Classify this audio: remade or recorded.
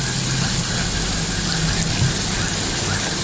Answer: recorded